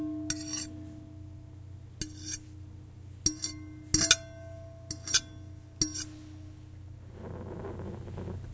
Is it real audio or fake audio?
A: real